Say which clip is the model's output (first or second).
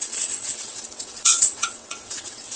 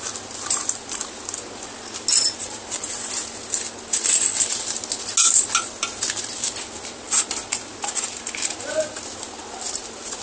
first